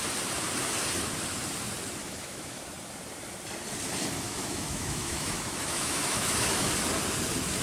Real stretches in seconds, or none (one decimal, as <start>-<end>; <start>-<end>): 0.0-2.0; 2.6-4.0; 6.7-7.6